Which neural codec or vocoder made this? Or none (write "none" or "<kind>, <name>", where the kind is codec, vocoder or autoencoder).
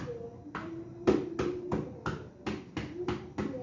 none